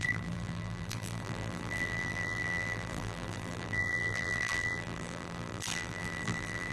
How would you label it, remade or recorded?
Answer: remade